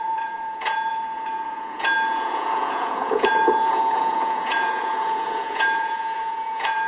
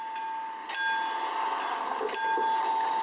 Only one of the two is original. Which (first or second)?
second